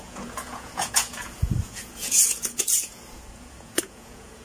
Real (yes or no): no